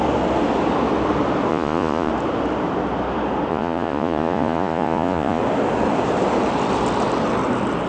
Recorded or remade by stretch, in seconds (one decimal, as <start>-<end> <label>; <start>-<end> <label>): 0.0-1.5 recorded; 1.5-2.1 remade; 2.1-3.5 recorded; 3.5-5.4 remade; 5.4-7.9 recorded